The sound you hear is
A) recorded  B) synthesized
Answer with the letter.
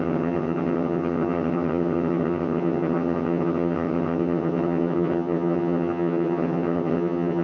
B